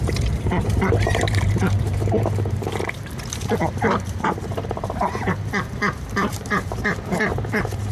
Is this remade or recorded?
remade